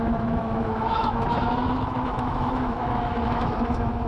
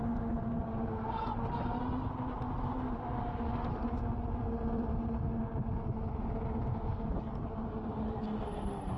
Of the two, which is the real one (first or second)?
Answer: second